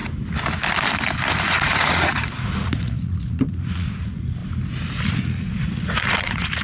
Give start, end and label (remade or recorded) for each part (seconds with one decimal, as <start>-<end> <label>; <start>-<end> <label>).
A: 0.0-1.4 recorded; 1.4-4.4 remade; 4.4-5.1 recorded; 5.1-6.6 remade